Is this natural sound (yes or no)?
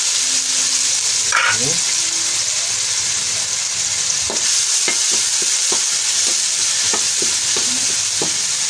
yes